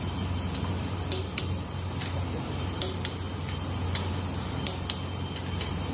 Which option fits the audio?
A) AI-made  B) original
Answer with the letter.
B